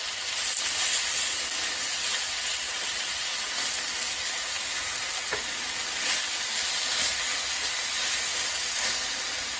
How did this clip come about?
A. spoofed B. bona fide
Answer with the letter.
B